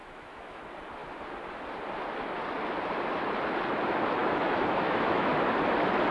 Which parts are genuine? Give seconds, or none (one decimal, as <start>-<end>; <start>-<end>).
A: 0.6-4.2; 5.3-6.1